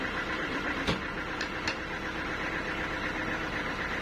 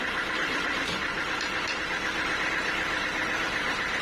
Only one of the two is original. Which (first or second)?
first